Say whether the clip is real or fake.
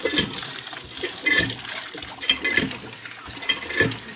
real